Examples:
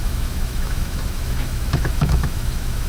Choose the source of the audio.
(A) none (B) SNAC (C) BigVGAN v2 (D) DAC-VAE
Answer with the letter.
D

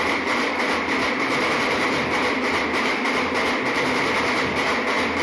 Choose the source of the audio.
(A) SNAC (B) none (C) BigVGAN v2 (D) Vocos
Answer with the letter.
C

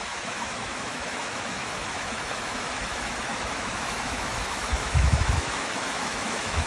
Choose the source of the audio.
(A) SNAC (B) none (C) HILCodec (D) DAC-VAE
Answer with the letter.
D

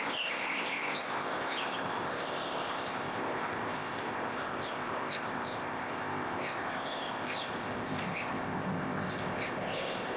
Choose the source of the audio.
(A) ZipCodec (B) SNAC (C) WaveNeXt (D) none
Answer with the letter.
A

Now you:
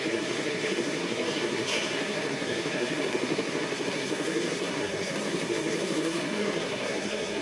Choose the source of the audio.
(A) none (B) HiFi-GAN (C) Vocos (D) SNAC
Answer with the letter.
D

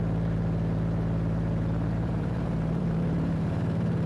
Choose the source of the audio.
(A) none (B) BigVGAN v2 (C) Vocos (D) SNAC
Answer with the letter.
B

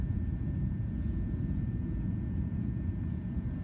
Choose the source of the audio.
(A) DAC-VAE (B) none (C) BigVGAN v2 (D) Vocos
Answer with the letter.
D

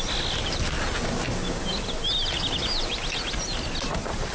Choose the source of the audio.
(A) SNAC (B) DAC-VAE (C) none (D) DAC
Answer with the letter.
C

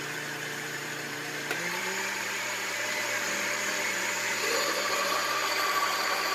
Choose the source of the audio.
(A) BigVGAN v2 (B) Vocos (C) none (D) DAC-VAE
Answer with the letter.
A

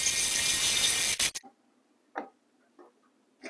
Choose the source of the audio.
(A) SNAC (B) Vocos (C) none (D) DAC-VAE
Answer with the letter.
C